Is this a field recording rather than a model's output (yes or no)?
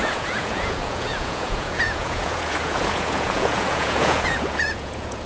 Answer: no